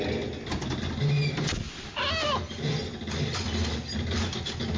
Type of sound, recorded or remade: recorded